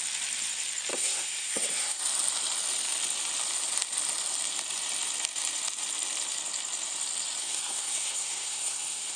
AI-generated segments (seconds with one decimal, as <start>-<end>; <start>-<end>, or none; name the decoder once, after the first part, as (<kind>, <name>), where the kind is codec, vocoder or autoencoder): 0.9-2.0 (codec, SNAC); 7.4-9.2